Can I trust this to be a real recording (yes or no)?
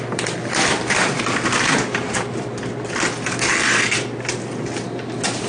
no